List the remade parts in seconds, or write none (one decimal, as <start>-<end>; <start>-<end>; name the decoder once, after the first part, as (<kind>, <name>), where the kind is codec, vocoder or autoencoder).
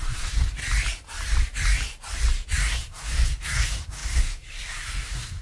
0.0-0.6 (codec, SNAC); 2.6-5.4